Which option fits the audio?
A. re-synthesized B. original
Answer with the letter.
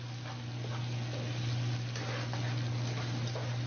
B